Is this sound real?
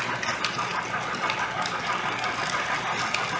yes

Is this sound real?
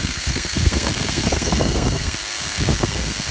no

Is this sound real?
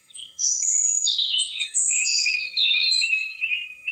no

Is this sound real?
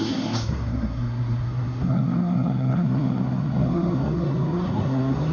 no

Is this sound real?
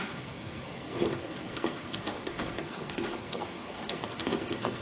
no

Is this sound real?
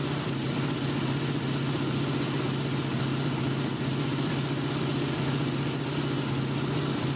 yes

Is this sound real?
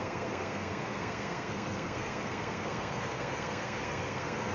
no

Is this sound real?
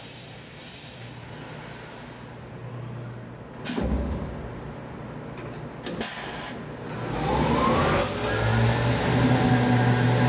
yes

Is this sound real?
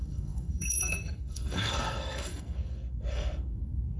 no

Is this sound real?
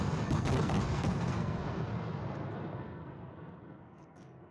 no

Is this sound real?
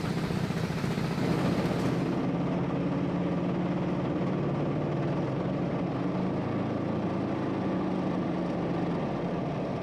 yes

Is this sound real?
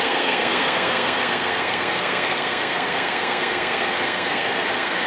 no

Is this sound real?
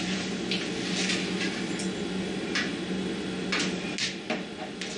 yes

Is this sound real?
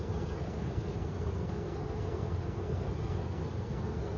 no